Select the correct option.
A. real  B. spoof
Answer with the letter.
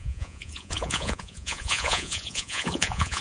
B